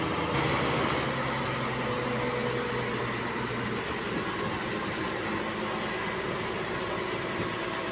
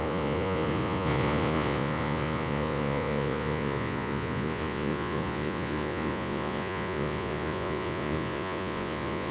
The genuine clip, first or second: first